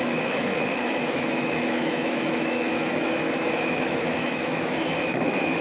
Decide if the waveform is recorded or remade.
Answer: remade